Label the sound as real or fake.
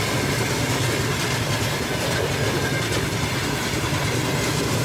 real